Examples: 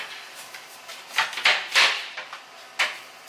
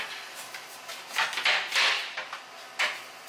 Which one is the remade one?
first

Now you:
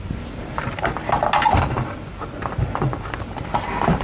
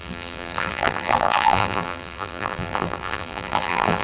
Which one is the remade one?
second